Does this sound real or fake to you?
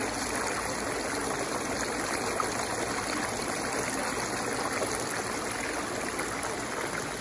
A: real